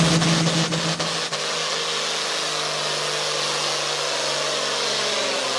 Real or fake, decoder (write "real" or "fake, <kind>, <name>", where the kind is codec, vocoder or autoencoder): real